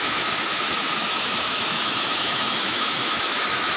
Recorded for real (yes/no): no